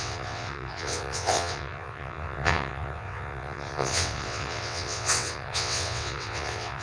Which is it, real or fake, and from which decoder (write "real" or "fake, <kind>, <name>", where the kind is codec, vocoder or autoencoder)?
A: fake, vocoder, WaveNeXt